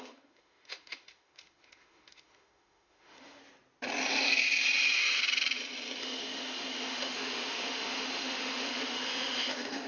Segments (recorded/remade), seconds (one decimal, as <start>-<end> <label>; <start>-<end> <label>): 0.0-3.4 remade; 3.4-6.0 recorded; 6.0-9.9 remade